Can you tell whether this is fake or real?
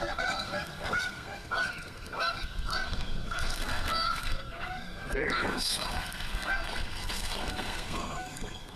fake